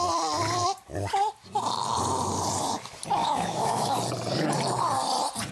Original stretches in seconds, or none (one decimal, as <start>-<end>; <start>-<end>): 0.0-3.2; 3.9-5.5